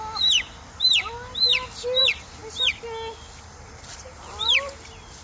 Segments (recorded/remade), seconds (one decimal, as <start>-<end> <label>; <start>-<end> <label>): 0.0-5.2 recorded